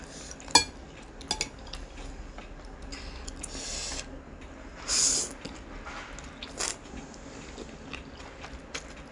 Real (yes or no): yes